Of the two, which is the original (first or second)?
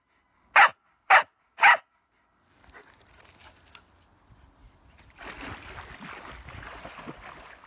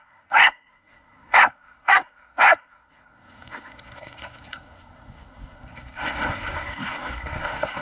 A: first